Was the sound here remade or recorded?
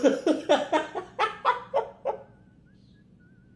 recorded